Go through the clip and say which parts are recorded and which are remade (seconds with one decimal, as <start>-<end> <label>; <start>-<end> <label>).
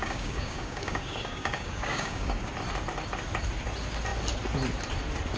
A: 0.0-2.5 remade; 2.5-5.4 recorded